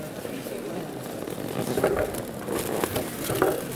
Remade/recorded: recorded